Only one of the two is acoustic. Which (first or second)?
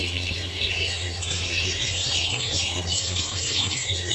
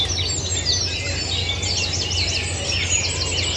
second